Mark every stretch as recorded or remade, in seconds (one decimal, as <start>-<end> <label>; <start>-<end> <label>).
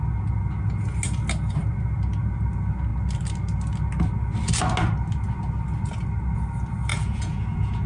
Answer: 0.0-6.9 recorded; 6.9-7.9 remade